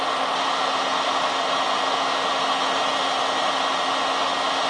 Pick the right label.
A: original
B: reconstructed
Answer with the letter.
A